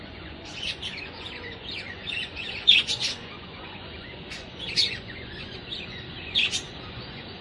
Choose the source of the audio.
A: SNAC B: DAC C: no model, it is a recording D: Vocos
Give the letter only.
D